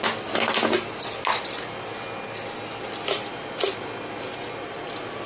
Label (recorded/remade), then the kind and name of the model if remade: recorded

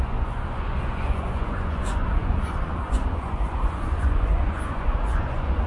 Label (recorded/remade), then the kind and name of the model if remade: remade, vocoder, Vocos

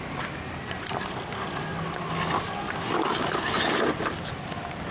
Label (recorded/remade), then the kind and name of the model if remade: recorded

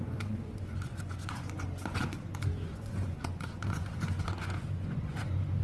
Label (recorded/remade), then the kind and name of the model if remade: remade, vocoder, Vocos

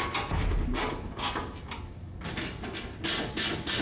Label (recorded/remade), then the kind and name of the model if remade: recorded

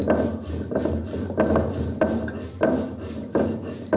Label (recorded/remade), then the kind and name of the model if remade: recorded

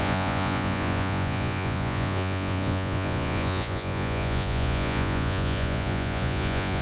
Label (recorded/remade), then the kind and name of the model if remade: remade, vocoder, Vocos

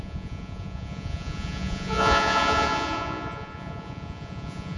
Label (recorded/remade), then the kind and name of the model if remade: remade, vocoder, Vocos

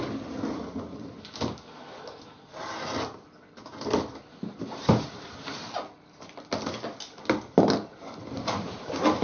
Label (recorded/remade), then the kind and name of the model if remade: recorded